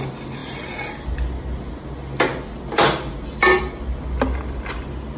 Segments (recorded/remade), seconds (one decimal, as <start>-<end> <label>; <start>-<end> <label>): 0.0-5.2 recorded

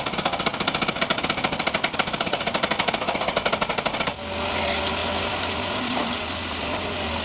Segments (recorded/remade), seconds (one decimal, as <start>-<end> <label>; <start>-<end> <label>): 0.0-5.0 recorded; 5.0-6.2 remade; 6.2-7.2 recorded

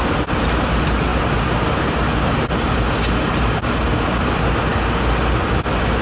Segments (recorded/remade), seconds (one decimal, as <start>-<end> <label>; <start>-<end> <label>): 0.0-6.0 recorded

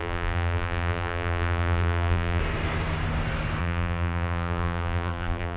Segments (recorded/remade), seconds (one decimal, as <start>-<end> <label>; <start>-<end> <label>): 0.0-2.4 remade; 2.4-3.6 recorded; 3.6-5.6 remade